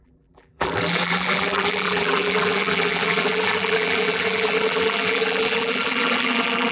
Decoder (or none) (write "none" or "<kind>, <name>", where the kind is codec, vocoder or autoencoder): vocoder, BigVGAN v2